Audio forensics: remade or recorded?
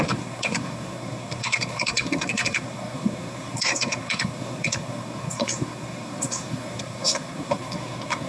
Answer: remade